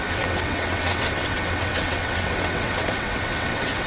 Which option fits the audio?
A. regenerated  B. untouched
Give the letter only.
A